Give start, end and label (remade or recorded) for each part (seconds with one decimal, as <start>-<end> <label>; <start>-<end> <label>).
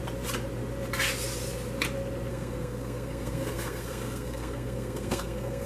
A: 0.0-2.3 recorded; 2.3-5.7 remade